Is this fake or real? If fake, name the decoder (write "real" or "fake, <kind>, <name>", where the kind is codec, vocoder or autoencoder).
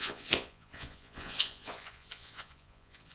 fake, vocoder, Vocos